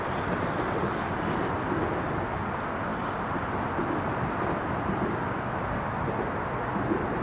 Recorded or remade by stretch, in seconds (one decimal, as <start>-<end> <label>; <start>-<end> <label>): 0.0-7.2 recorded